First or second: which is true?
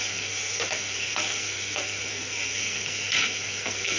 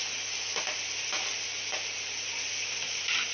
second